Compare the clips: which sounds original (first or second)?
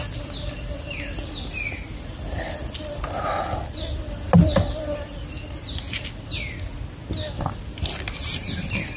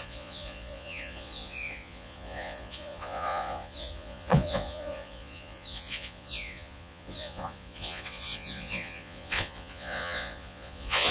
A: first